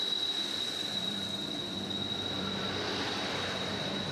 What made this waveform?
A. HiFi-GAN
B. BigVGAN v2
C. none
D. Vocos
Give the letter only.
B